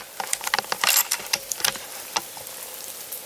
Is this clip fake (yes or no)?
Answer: yes